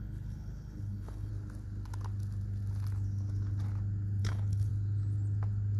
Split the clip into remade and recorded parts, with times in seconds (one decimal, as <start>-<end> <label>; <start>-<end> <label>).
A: 0.0-1.3 remade; 1.3-4.2 recorded; 4.2-4.7 remade; 4.7-5.8 recorded